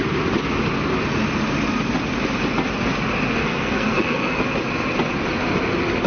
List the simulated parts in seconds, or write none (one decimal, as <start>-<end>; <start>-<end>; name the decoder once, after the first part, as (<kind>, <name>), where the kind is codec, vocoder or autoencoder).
3.4-4.4 (codec, SNAC)